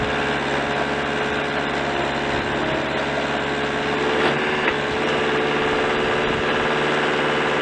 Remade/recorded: recorded